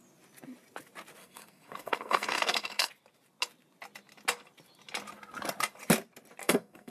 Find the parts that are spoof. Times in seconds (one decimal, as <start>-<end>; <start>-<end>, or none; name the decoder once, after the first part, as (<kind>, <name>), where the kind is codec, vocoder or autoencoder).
1.2-2.9 (codec, SNAC); 6.4-6.9